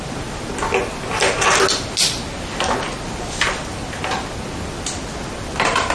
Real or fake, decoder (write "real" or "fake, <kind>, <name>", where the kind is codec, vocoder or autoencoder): real